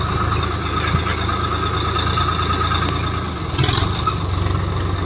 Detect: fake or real real